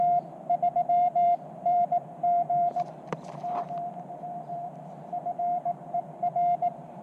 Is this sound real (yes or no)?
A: no